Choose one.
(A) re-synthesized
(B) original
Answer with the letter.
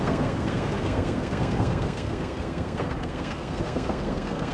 A